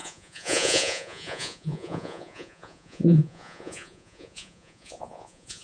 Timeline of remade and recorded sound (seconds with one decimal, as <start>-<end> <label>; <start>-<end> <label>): 0.0-5.6 remade